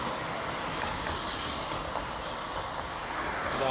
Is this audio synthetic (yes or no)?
no